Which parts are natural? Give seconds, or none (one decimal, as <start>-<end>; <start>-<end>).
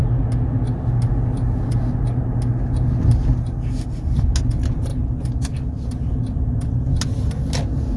0.0-4.9; 5.5-8.0